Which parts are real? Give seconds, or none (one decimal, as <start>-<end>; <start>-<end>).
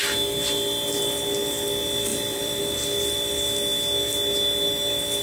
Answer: 0.0-2.1; 2.6-5.2